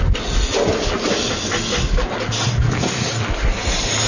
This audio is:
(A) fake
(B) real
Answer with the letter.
B